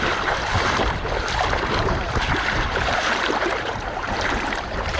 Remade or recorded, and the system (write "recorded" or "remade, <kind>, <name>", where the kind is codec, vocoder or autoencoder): remade, vocoder, BigVGAN v2